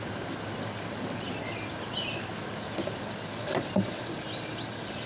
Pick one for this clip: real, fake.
real